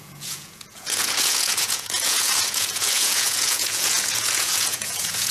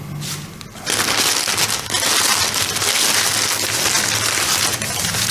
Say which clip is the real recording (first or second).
second